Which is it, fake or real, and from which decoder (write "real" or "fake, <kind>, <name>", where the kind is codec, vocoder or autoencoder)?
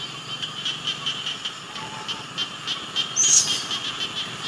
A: real